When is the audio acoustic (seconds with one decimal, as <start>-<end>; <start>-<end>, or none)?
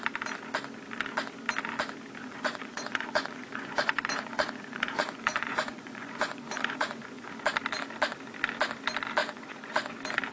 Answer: 0.0-2.2; 7.3-9.2; 9.9-10.3